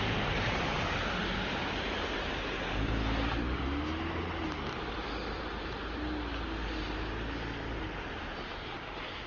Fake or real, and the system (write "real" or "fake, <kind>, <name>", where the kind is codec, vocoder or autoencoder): real